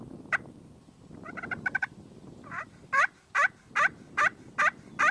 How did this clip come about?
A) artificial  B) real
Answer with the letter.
B